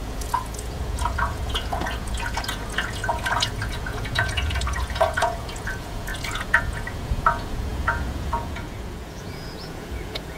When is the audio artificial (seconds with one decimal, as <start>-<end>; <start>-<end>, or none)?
0.0-10.4